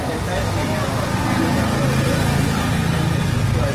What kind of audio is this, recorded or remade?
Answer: recorded